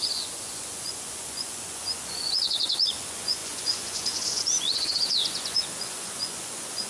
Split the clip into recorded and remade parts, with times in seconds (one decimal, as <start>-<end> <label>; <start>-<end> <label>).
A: 0.0-6.9 remade